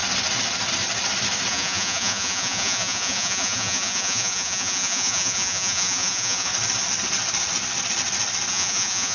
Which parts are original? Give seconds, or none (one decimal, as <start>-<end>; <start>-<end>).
0.0-1.5; 6.5-8.5